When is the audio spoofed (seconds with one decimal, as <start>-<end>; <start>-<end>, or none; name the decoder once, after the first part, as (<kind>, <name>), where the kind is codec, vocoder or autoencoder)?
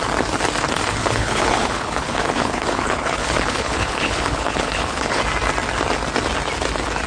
1.0-5.2 (codec, HILCodec)